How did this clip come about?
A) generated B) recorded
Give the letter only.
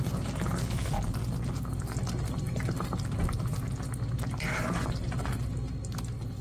B